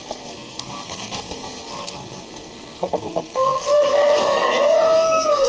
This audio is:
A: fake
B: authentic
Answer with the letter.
A